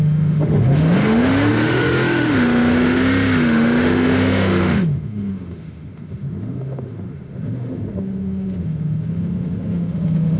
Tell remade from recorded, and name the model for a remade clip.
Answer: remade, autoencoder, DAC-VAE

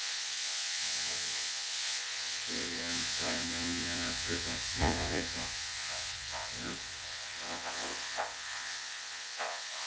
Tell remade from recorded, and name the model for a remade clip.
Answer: remade, vocoder, Vocos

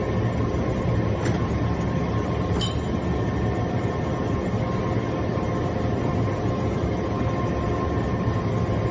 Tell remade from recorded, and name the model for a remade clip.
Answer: recorded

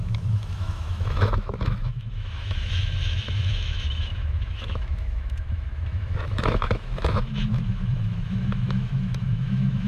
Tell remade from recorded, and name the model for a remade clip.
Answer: remade, autoencoder, DAC-VAE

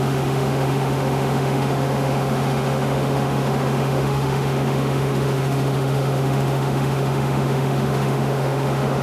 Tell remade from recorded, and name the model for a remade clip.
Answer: remade, autoencoder, DAC-VAE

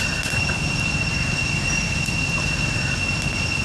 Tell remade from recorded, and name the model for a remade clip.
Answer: recorded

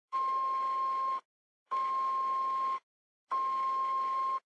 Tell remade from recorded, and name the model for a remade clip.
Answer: remade, autoencoder, DAC-VAE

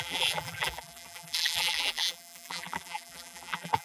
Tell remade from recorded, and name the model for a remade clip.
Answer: remade, vocoder, BigVGAN v2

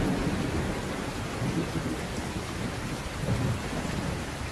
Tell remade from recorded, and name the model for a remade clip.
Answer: recorded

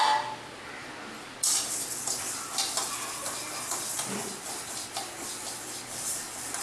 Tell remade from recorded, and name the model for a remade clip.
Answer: recorded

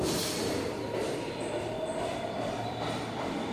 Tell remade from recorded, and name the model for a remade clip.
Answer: remade, vocoder, BigVGAN v2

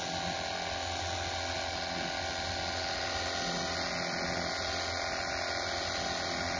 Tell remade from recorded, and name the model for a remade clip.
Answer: recorded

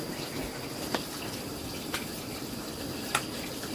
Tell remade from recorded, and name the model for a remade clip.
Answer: remade, vocoder, BigVGAN v2